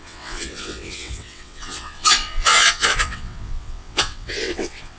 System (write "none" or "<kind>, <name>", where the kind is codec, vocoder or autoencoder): vocoder, WaveNeXt